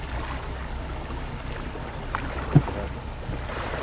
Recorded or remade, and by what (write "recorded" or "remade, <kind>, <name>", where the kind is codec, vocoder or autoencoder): recorded